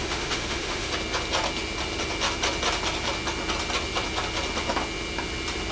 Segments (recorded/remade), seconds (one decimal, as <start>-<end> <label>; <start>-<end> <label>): 0.0-0.9 remade; 0.9-5.7 recorded